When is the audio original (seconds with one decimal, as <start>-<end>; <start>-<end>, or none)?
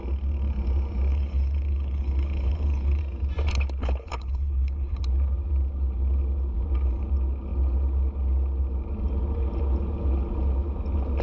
0.0-1.1; 3.0-3.8; 5.0-11.2